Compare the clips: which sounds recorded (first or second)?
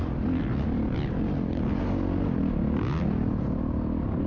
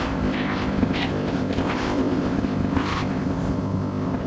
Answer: first